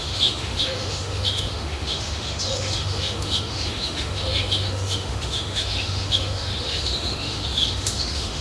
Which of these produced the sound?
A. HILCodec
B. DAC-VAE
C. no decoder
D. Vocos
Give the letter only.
B